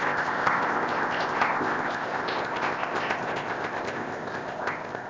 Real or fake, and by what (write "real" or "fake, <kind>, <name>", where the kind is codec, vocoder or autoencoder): fake, codec, ZipCodec